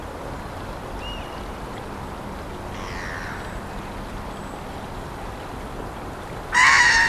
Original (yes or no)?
yes